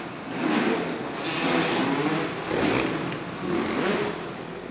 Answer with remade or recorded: recorded